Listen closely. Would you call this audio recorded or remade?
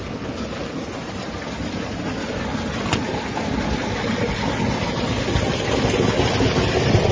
recorded